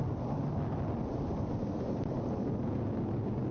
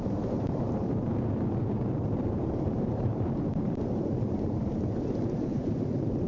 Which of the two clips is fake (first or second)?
second